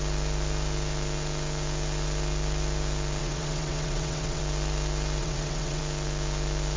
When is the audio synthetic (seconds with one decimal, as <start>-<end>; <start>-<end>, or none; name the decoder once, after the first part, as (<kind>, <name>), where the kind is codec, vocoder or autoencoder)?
3.2-4.4 (vocoder, WaveNeXt); 5.2-5.8